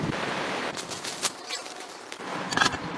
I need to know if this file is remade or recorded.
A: remade